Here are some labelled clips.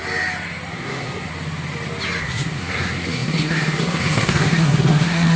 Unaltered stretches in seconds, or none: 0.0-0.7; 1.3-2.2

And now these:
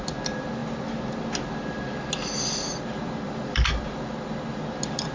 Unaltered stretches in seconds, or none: 0.0-5.1

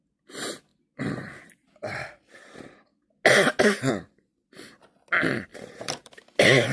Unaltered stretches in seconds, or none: 0.0-5.5; 6.2-6.7

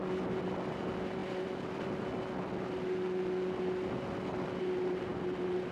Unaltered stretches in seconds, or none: 0.0-5.7